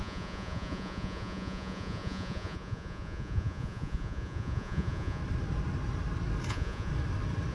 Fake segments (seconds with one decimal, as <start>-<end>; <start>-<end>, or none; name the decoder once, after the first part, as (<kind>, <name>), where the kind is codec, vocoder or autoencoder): 0.0-5.2 (vocoder, Vocos); 6.5-6.9